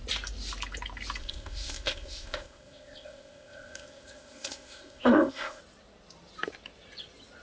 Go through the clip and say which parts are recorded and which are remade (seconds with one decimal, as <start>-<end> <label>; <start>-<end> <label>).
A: 0.0-1.2 recorded; 1.2-5.6 remade; 5.6-7.4 recorded

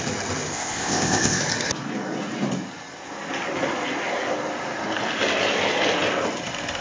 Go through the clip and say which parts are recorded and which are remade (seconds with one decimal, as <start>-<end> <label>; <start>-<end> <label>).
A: 0.0-0.5 recorded; 0.5-1.4 remade; 1.4-6.8 recorded

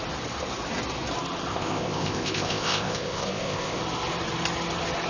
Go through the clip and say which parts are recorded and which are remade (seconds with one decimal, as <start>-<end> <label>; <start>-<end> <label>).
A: 0.0-1.5 recorded; 1.5-3.8 remade; 3.8-5.1 recorded

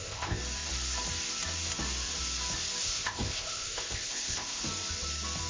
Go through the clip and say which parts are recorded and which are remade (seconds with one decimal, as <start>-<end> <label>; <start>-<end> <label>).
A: 0.0-0.4 remade; 0.4-2.8 recorded; 2.8-4.6 remade; 4.6-5.5 recorded

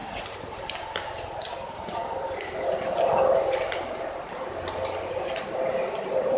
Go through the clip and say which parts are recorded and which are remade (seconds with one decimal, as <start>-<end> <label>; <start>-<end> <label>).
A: 0.0-6.4 recorded

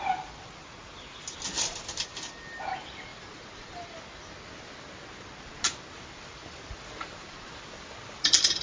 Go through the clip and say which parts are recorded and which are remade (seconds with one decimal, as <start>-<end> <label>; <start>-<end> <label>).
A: 0.0-8.6 recorded

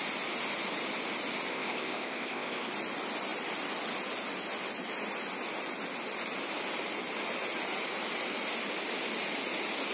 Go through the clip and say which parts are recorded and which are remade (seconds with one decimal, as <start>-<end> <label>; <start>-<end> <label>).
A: 0.0-1.5 recorded; 1.5-2.7 remade; 2.7-9.9 recorded

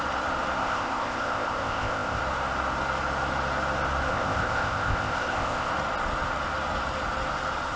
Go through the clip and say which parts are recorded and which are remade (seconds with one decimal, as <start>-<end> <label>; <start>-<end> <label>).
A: 0.0-0.6 recorded; 0.6-2.2 remade; 2.2-4.1 recorded; 4.1-5.7 remade; 5.7-7.8 recorded